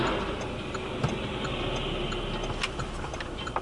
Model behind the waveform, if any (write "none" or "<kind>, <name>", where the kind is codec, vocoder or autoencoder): none